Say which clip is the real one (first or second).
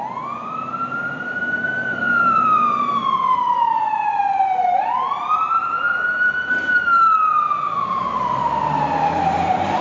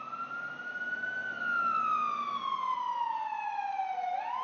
second